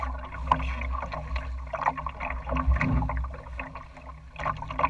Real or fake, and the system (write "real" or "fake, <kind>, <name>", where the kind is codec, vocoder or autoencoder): real